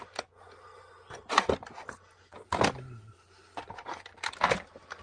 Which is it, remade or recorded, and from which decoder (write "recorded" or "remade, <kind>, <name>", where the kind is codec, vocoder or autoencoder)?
recorded